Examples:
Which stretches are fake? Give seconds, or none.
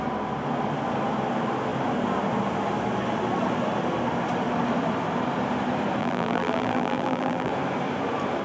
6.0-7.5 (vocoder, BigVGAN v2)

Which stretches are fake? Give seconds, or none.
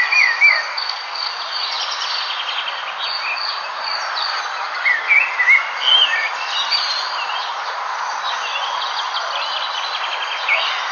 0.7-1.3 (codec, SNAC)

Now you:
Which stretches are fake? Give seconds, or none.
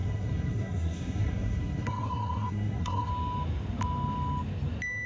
0.0-3.1 (codec, SNAC)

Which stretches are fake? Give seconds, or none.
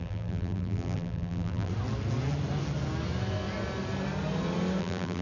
0.0-1.7 (vocoder, BigVGAN v2); 4.8-5.2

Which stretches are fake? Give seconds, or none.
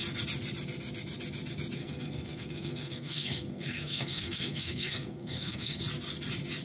1.8-5.8 (codec, SNAC)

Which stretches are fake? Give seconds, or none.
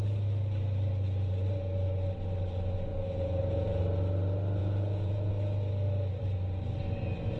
2.9-3.8 (vocoder, Vocos); 4.6-5.3